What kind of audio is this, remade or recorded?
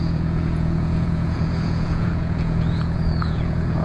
remade